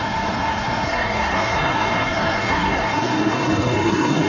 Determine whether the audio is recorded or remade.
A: remade